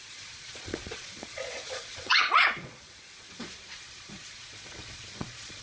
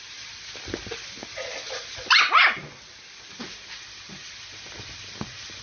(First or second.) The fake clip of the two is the first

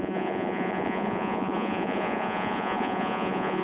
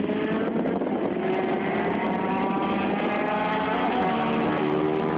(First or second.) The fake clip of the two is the first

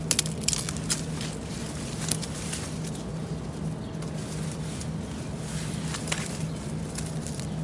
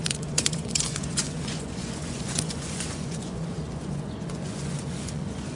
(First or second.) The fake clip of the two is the second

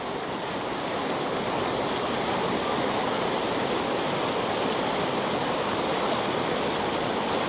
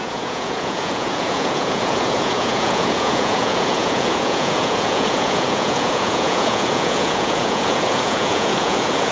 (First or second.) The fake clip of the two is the second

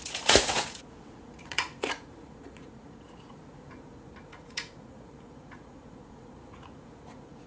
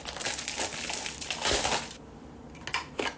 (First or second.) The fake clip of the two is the first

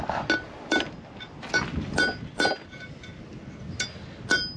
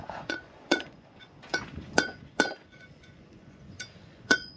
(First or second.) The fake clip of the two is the second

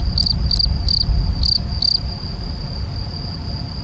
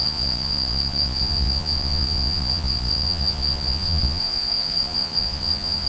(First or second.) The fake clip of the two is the second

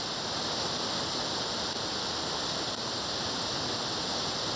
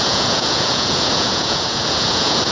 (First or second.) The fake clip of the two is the second